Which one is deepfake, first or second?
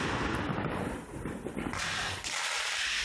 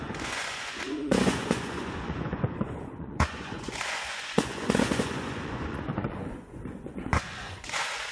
second